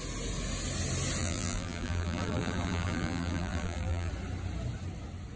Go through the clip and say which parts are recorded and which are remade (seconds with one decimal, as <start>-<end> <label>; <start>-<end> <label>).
0.0-1.2 recorded; 1.2-4.1 remade; 4.1-5.4 recorded